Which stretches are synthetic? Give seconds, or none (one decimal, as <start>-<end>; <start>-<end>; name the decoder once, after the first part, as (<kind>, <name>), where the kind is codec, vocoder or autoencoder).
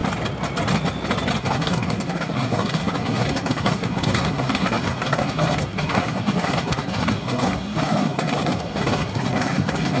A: 1.4-10.0 (codec, SNAC)